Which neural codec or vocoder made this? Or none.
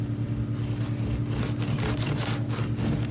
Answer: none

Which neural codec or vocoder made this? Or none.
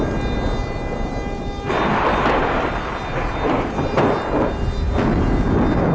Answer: none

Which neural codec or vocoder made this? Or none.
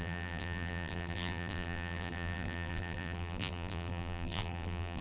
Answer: vocoder, BigVGAN v2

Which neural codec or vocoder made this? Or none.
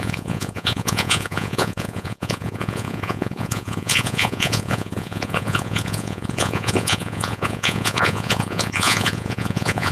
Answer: vocoder, Vocos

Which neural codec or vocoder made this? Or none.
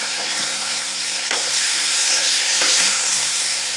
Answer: codec, SNAC